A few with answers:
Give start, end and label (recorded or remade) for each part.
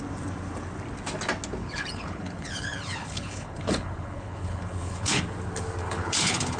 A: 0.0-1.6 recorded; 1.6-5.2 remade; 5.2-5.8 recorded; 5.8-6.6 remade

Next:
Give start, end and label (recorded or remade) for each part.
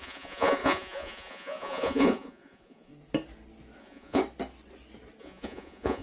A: 0.0-2.9 remade; 2.9-3.8 recorded; 3.8-4.2 remade; 4.2-5.2 recorded; 5.2-6.0 remade